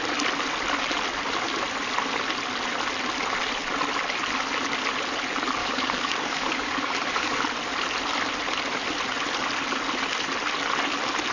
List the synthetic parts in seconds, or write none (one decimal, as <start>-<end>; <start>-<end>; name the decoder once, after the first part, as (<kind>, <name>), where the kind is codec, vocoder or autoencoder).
5.6-7.4 (codec, DAC)